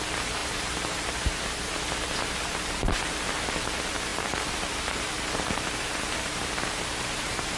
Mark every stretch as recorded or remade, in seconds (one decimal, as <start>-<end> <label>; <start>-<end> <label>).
0.0-7.6 remade